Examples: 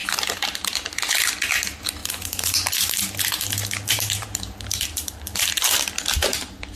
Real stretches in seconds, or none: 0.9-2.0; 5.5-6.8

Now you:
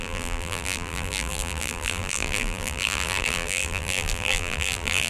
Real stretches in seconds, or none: none

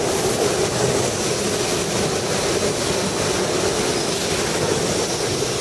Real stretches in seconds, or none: 0.0-5.6